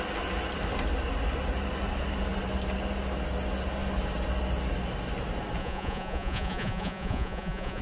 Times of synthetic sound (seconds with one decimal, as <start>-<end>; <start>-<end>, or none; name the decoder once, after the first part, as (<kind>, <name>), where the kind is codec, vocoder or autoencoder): 5.6-7.8 (vocoder, Vocos)